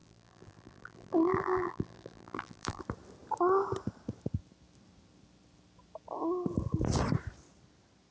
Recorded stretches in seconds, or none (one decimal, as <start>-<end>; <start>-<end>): 2.8-8.1